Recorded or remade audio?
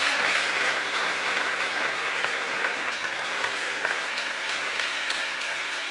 remade